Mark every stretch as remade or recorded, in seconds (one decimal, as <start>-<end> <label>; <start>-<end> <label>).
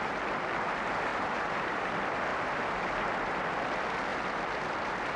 0.0-1.1 recorded; 1.1-1.9 remade; 1.9-2.3 recorded; 2.3-2.9 remade; 2.9-5.2 recorded